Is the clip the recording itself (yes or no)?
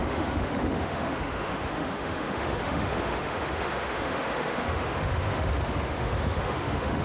no